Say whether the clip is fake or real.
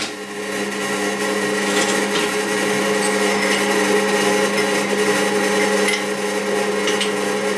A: real